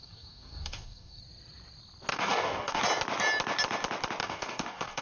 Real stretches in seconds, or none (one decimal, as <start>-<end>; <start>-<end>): 1.2-2.1; 2.8-4.2